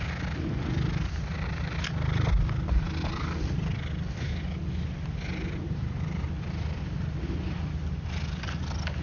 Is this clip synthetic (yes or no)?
no